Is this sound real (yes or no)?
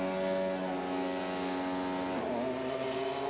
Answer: yes